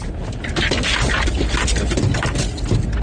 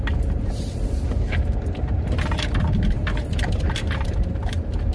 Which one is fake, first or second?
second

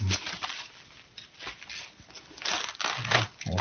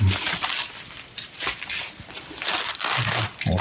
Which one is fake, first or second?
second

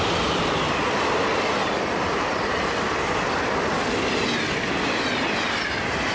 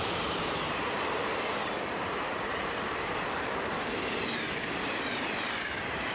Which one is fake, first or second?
second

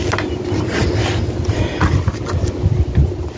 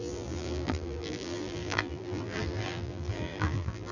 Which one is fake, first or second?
second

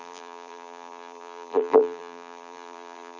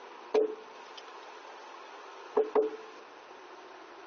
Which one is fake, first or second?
first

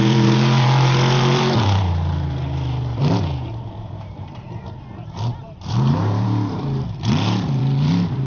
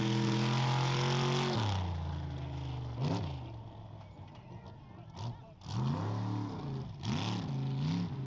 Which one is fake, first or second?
first